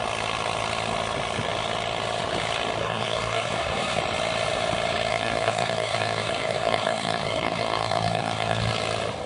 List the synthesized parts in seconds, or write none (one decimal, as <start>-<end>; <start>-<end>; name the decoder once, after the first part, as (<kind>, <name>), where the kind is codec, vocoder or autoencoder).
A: 2.8-4.0 (codec, SNAC); 5.1-8.6